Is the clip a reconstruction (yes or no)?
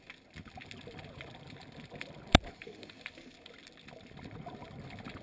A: no